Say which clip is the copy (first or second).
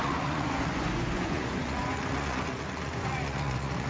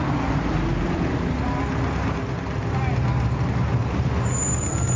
first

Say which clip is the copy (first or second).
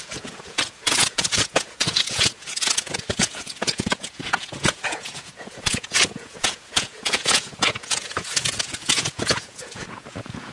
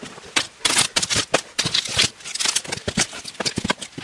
first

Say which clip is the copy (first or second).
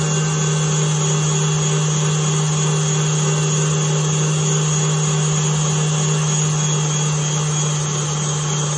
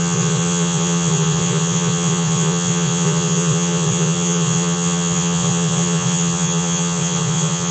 second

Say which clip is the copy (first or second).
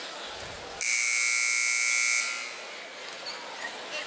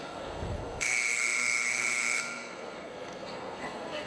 second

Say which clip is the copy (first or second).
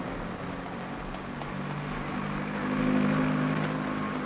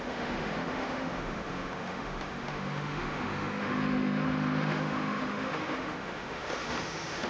second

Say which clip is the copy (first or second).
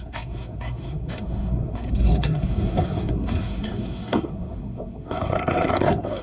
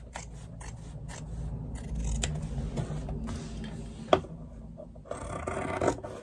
first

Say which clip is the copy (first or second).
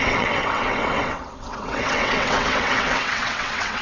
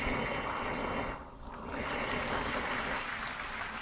first